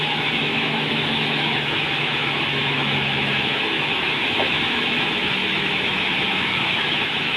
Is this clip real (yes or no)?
no